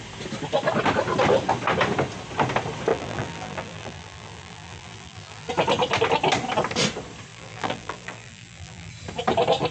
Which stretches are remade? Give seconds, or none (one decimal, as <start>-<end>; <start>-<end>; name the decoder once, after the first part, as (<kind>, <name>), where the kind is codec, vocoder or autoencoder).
2.9-5.5 (vocoder, BigVGAN v2); 7.3-8.9